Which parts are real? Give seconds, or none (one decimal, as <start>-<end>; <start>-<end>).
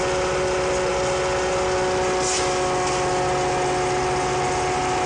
0.0-5.1